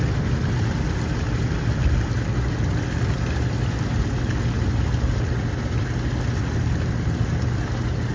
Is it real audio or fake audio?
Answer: real